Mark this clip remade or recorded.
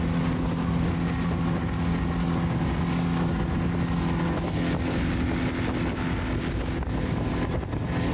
recorded